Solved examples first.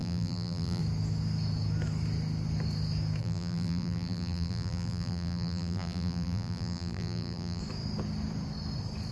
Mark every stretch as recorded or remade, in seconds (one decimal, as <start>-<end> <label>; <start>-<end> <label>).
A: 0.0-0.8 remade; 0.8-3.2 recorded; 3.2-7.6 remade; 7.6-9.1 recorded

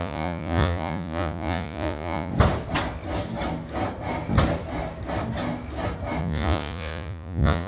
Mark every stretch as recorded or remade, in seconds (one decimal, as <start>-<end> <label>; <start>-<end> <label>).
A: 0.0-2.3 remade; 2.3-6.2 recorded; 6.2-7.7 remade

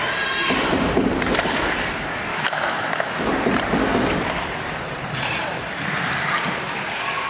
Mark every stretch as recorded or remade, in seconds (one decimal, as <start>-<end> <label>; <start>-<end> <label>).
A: 0.0-2.3 recorded; 2.3-3.2 remade; 3.2-7.3 recorded

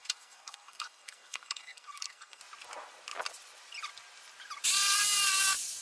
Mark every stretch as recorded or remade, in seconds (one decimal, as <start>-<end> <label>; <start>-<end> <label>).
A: 0.0-2.4 remade; 2.4-5.8 recorded

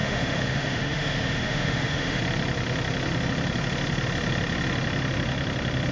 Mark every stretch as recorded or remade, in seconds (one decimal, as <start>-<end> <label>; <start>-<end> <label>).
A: 0.0-2.2 remade; 2.2-5.9 recorded

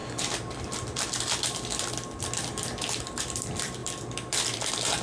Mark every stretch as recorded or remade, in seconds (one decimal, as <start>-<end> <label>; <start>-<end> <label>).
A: 0.0-3.0 recorded; 3.0-5.0 remade

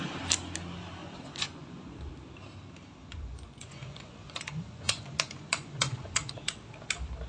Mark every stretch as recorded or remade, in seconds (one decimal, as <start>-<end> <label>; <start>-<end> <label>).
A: 0.0-1.0 recorded; 1.0-2.1 remade; 2.1-3.0 recorded; 3.0-6.3 remade; 6.3-7.3 recorded